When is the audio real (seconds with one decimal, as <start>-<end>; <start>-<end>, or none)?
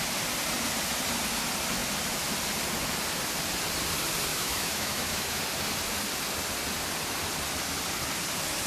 0.0-4.3; 5.4-8.7